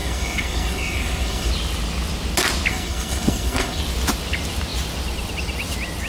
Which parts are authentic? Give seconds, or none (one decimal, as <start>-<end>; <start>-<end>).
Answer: 1.5-2.7; 3.8-6.1